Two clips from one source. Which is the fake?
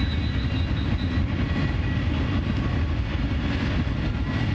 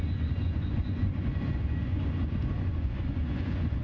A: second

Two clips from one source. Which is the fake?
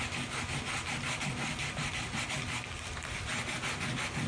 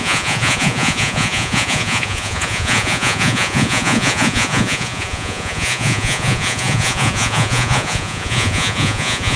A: second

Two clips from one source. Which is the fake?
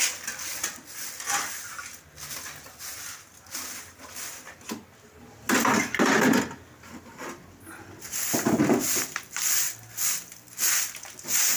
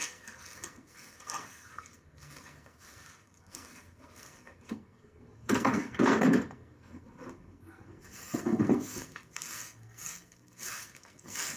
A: second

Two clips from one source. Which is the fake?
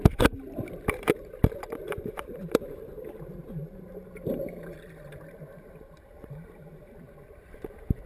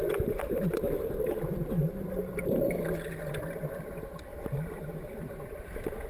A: first